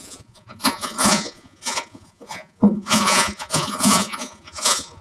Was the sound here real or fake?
fake